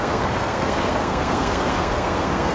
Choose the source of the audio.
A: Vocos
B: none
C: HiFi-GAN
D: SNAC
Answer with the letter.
D